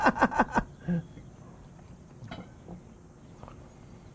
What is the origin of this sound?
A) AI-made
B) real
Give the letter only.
B